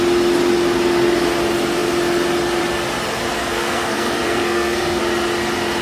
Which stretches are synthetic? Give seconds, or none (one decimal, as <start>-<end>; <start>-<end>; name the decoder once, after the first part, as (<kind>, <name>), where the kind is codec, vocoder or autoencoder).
3.4-5.0 (codec, SNAC)